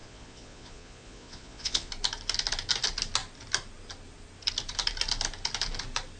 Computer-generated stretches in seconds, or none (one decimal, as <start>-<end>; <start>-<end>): 0.0-1.9